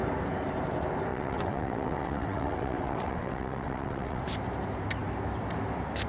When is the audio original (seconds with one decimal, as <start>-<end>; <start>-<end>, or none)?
0.0-1.1; 4.2-6.1

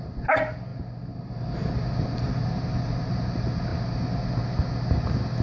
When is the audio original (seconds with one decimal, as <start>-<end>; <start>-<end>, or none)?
0.0-5.4

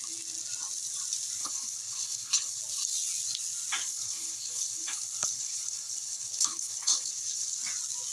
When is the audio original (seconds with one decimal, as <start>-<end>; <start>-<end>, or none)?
0.0-1.4; 2.6-3.8; 7.6-8.1

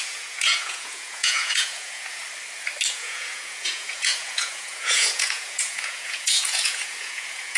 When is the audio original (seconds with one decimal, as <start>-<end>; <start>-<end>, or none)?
2.2-2.9

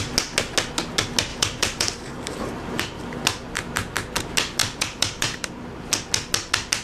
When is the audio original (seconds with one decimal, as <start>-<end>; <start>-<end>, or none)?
0.0-1.3; 2.8-4.6; 5.6-6.8